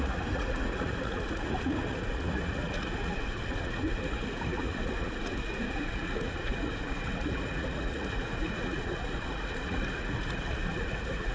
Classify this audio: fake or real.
fake